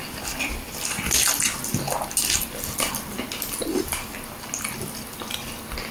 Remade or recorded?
recorded